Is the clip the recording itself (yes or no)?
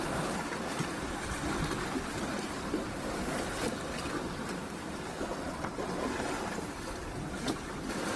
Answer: yes